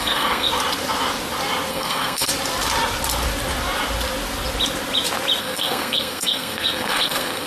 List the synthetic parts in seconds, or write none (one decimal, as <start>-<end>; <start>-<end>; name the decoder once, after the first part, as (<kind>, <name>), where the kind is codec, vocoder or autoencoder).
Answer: 0.0-0.5 (codec, SNAC); 1.7-2.3; 5.4-7.5